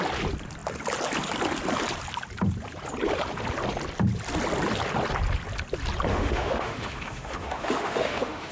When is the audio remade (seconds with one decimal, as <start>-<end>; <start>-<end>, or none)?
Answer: 6.1-8.5